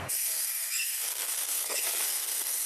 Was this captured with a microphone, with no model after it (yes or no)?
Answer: no